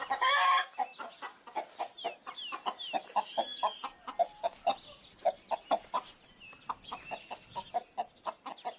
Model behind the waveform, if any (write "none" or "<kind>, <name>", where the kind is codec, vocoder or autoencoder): none